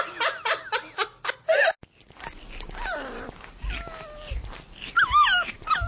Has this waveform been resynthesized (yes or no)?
no